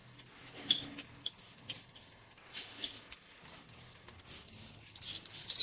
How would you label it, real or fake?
real